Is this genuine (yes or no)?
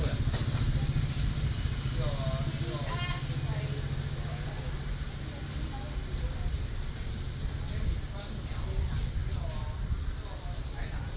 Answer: yes